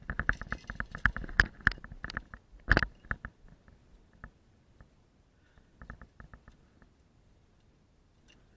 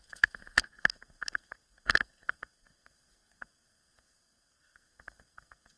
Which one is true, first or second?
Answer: first